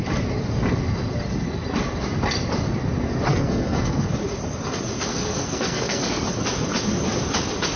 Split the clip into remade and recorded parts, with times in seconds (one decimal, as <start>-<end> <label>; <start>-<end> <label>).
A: 0.0-3.3 recorded; 3.3-4.1 remade; 4.1-5.1 recorded; 5.1-6.3 remade; 6.3-7.8 recorded

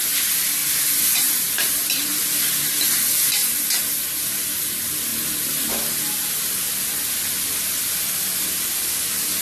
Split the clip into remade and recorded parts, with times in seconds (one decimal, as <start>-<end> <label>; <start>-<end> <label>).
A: 0.0-0.6 recorded; 0.6-2.2 remade; 2.2-9.4 recorded

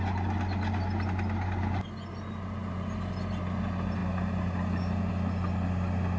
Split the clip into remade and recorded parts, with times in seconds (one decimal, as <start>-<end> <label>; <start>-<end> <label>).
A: 0.0-6.2 recorded

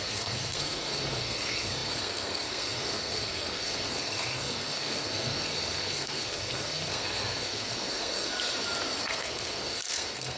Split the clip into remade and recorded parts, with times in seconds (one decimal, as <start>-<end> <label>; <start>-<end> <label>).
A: 0.0-8.3 remade; 8.3-9.0 recorded; 9.0-10.4 remade

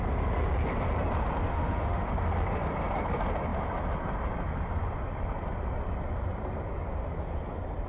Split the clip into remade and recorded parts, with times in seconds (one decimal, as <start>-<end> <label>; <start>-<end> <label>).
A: 0.0-1.5 recorded; 1.5-2.1 remade; 2.1-7.9 recorded

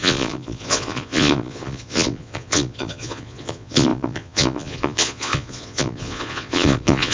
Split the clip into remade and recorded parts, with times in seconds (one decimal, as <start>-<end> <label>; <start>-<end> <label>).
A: 0.0-7.1 remade